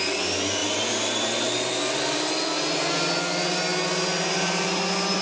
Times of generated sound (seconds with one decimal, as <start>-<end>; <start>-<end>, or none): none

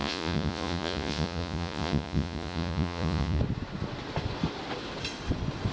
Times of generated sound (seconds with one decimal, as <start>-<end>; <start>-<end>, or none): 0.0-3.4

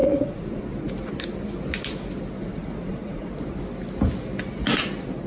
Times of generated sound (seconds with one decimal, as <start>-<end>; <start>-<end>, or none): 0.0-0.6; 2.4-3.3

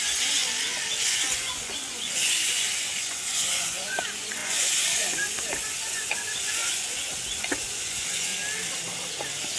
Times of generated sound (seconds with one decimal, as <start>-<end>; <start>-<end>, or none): 0.0-0.4; 1.0-8.3

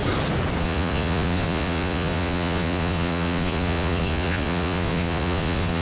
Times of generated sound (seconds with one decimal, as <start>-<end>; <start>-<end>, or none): 0.6-5.8